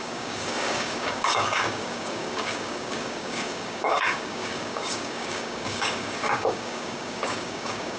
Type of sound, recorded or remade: remade